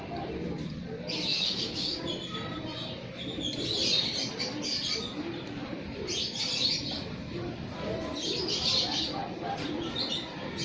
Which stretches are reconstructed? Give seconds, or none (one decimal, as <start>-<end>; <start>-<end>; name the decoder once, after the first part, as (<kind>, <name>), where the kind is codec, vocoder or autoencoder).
1.3-2.0 (codec, DAC)